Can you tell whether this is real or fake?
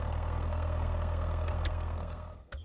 fake